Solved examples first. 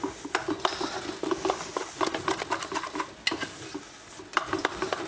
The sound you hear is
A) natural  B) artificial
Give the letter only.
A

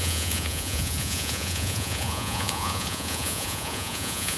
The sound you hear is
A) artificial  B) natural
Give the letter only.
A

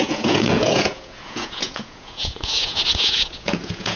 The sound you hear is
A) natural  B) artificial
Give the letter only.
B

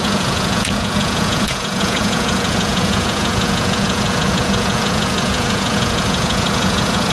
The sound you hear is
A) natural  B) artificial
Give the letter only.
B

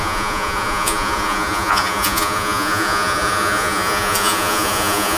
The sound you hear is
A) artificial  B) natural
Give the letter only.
A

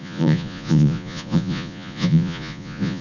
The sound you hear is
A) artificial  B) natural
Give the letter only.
A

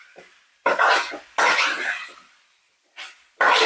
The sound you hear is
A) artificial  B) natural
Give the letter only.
B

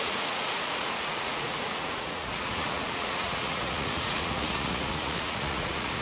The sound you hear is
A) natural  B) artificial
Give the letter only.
B